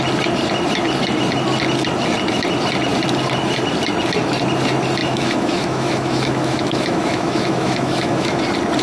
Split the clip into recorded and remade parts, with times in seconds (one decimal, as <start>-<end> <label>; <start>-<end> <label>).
0.0-5.0 recorded; 5.0-8.4 remade; 8.4-8.8 recorded